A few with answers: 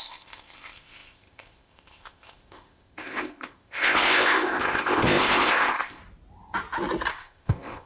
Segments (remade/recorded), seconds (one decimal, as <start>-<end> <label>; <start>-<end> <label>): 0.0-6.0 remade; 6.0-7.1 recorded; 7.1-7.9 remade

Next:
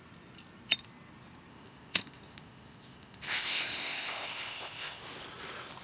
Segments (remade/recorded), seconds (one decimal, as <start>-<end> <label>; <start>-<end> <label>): 0.0-1.5 recorded; 1.5-5.0 remade; 5.0-5.8 recorded

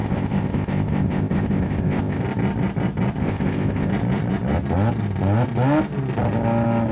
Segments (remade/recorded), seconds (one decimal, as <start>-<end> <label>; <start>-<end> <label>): 0.0-2.2 remade; 2.2-3.2 recorded; 3.2-3.9 remade; 3.9-6.9 recorded

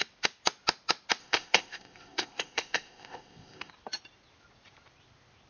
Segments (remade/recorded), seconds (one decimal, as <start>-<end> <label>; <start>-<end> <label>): 0.0-1.2 recorded; 1.2-3.7 remade; 3.7-5.5 recorded

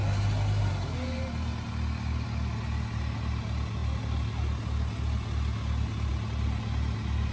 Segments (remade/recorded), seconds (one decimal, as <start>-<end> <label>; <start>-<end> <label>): 0.0-7.3 recorded

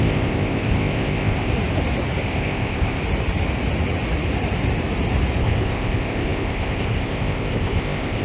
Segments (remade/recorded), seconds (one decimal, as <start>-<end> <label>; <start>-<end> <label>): 0.0-1.5 remade; 1.5-2.2 recorded; 2.2-3.0 remade; 3.0-5.4 recorded; 5.4-8.2 remade